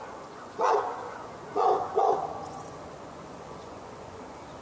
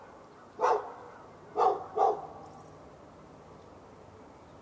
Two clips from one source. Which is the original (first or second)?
second